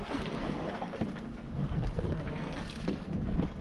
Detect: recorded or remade remade